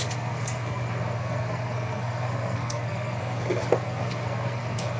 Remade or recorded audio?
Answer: remade